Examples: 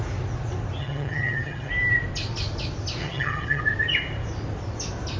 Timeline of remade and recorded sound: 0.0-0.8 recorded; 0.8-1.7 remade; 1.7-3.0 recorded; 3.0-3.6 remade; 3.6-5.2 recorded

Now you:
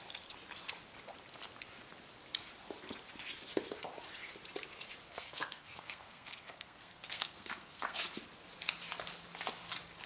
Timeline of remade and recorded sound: 0.0-5.1 recorded; 5.1-8.0 remade; 8.0-10.1 recorded